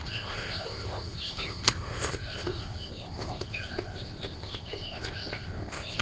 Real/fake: fake